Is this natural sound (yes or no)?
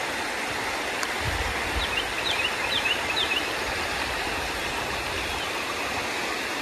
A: yes